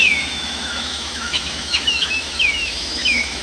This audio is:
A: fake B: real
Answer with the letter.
A